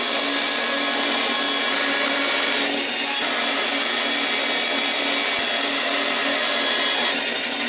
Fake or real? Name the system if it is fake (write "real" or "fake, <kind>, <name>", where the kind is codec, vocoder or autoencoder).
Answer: real